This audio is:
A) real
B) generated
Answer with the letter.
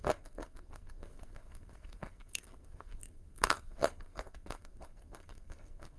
B